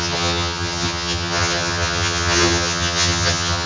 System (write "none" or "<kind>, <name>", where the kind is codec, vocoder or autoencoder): vocoder, HiFi-GAN